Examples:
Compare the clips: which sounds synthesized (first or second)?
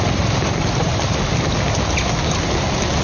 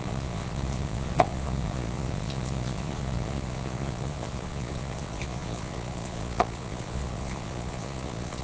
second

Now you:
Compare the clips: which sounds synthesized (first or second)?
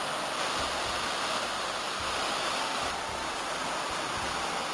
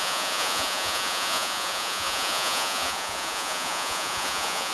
second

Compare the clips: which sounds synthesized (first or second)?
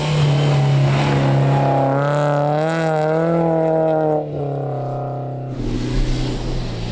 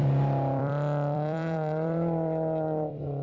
second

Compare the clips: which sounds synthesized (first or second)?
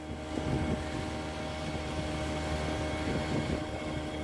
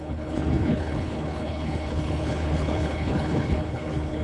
second